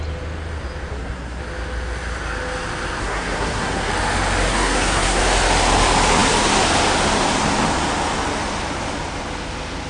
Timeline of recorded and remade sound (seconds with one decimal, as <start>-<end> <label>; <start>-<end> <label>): 0.0-0.9 recorded; 0.9-1.4 remade; 1.4-3.0 recorded; 3.0-3.9 remade; 3.9-4.5 recorded; 4.5-5.2 remade; 5.2-9.9 recorded